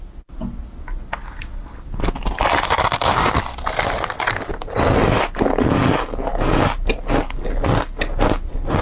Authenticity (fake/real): real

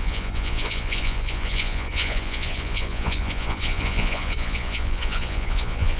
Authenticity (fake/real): fake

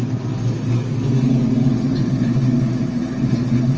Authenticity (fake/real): real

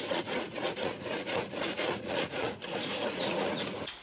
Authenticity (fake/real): fake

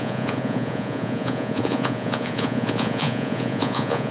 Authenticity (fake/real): fake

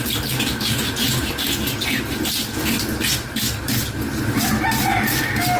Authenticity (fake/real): real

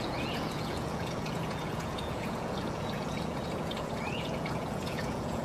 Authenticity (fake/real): fake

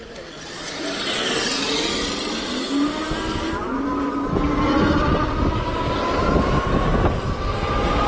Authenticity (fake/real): real